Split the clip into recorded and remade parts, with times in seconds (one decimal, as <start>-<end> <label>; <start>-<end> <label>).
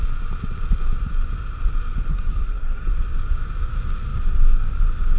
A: 0.0-2.1 recorded; 2.1-2.9 remade; 2.9-5.2 recorded